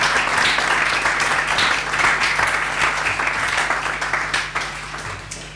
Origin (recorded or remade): recorded